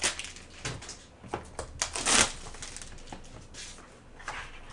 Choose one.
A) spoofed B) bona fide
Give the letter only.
B